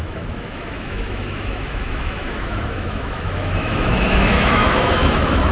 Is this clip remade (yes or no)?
yes